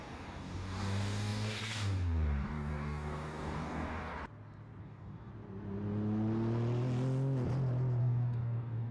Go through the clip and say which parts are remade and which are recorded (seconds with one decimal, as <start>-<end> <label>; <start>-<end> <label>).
0.0-4.1 remade; 4.1-4.8 recorded; 4.8-5.3 remade; 5.3-8.0 recorded; 8.0-8.9 remade